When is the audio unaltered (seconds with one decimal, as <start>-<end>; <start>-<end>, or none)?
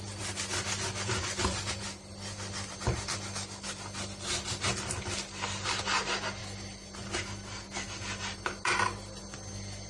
0.0-9.9